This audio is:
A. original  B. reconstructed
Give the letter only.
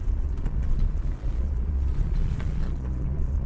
B